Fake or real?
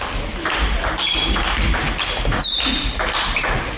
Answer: real